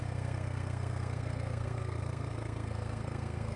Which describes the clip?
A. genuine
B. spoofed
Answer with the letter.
B